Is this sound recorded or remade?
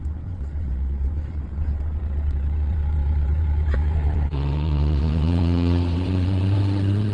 remade